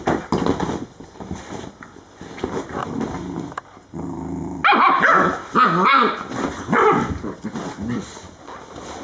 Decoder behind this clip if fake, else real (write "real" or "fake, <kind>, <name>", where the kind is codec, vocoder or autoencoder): real